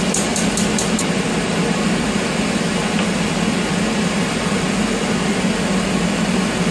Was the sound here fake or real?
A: real